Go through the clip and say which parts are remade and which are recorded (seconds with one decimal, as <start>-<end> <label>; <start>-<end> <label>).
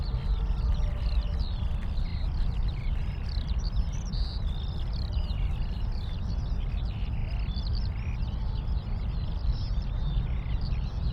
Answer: 0.0-2.1 recorded; 2.1-6.7 remade; 6.7-11.1 recorded